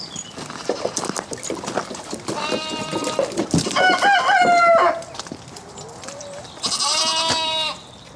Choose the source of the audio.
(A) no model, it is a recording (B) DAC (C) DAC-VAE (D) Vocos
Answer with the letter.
A